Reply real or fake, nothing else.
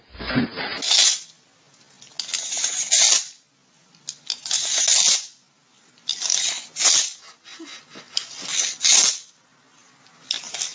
real